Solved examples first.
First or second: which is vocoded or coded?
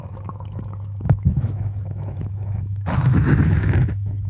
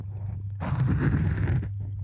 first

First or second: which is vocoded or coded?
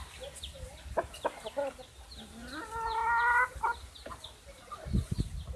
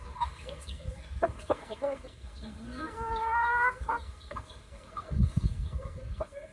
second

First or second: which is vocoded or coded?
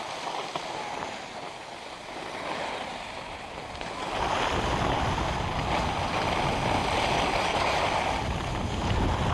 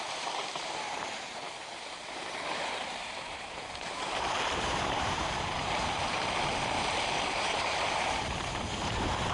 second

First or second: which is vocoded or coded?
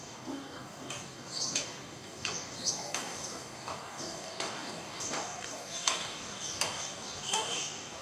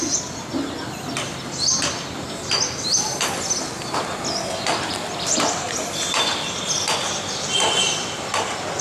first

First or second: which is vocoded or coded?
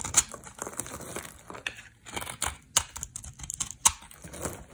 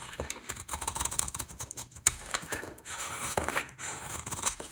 second